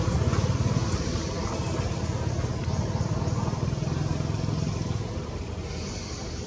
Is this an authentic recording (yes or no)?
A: yes